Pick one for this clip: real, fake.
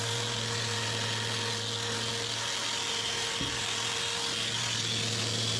real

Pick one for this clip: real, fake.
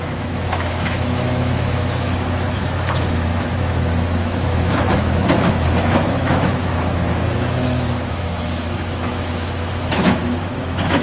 fake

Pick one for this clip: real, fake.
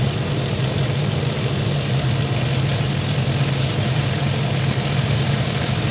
real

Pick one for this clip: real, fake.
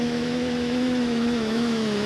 fake